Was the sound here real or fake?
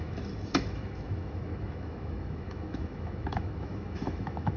fake